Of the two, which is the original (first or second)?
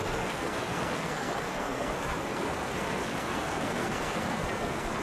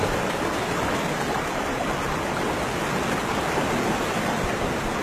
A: second